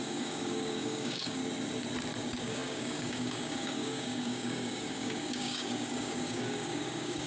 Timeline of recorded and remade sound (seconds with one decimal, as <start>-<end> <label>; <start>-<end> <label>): 0.0-1.4 remade; 1.4-2.2 recorded; 2.2-7.3 remade